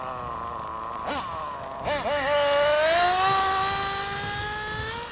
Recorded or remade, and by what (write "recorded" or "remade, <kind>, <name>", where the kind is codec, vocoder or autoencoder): recorded